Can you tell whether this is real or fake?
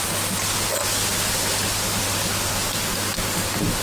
real